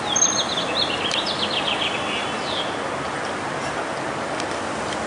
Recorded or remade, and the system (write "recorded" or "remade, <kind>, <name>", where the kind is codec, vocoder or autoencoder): recorded